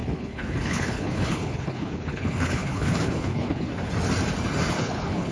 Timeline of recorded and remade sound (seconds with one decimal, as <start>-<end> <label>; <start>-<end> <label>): 0.0-3.7 remade; 3.7-4.7 recorded; 4.7-5.3 remade